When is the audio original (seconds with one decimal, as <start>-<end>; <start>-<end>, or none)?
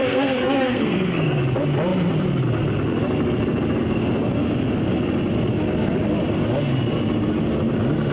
1.4-8.1